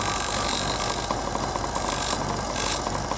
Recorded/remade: recorded